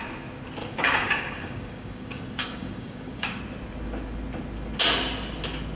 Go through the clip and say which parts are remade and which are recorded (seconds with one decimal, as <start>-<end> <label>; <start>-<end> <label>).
0.0-0.6 recorded; 0.6-3.4 remade; 3.4-5.7 recorded